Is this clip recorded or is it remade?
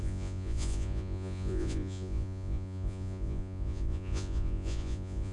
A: remade